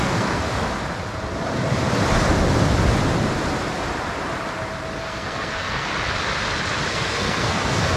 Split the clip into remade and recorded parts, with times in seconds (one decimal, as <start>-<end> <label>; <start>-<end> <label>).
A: 0.0-0.5 remade; 0.5-5.0 recorded; 5.0-5.9 remade; 5.9-6.9 recorded; 6.9-8.0 remade